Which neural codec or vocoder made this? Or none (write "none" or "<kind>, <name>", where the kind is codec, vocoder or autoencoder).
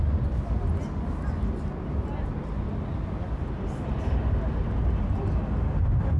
none